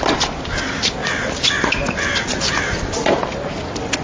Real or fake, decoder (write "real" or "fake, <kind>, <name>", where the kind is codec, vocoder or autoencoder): real